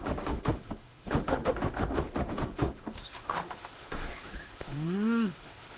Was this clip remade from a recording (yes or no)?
yes